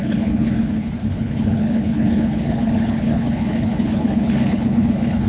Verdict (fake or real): fake